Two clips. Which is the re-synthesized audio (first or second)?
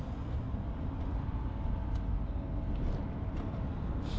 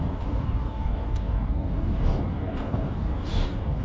second